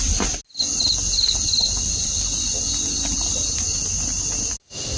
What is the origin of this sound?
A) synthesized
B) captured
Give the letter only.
B